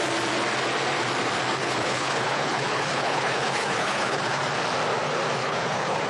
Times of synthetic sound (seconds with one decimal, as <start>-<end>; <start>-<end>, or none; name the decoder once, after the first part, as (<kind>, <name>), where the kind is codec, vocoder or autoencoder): 1.6-4.4 (codec, HILCodec); 5.4-6.1

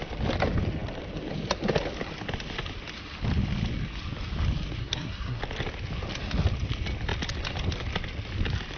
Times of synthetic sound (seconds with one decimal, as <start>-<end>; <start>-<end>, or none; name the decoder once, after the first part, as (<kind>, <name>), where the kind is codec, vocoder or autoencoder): 4.8-5.4 (codec, SNAC)

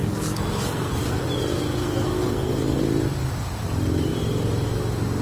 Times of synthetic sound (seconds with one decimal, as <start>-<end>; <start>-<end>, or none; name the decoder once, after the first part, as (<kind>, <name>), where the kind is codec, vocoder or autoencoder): 0.0-1.2 (codec, SNAC); 1.8-2.8

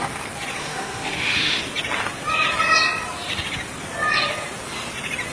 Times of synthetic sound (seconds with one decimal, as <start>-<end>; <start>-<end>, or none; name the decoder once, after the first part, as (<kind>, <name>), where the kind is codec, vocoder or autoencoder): 0.6-1.6 (autoencoder, DAC-VAE)

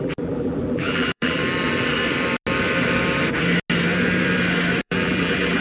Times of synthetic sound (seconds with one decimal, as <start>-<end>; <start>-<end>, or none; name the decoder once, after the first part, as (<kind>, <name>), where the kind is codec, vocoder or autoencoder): 0.0-1.4 (vocoder, BigVGAN v2); 4.8-5.6

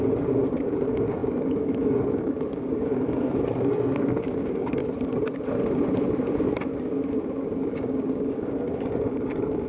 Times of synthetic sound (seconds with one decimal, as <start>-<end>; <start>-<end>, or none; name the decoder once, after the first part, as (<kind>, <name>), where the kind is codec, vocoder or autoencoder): 0.0-4.8 (codec, DAC); 7.7-9.7

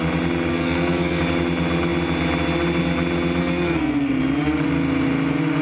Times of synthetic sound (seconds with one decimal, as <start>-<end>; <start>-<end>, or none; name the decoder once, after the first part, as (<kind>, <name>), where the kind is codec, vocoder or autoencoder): 0.5-1.2 (codec, SNAC); 3.4-4.2

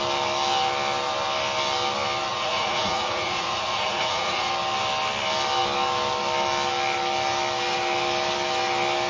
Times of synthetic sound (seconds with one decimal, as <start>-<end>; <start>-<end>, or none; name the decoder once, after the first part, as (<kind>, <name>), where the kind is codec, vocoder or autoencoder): 2.3-4.5 (vocoder, Vocos)